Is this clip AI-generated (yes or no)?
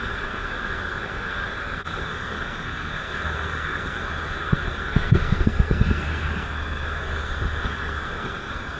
yes